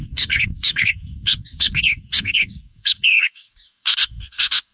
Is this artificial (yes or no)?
yes